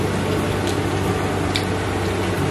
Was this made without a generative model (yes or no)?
yes